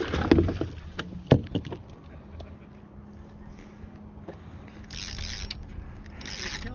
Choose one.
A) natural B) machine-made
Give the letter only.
A